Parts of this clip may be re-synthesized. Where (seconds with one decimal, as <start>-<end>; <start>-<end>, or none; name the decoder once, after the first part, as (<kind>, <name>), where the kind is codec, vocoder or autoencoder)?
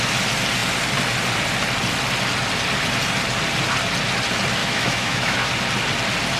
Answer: 4.6-5.5 (autoencoder, DAC-VAE)